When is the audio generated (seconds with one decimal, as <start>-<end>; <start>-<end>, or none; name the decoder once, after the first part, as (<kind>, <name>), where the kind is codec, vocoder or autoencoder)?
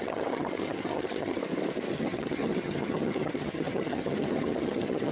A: 0.0-1.4 (vocoder, HiFi-GAN); 1.9-5.1